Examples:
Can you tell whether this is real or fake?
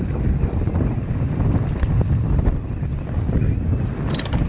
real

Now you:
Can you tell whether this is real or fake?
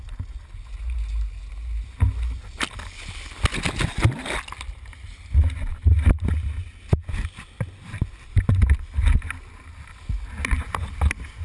real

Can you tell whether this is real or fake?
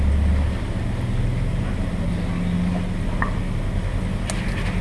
real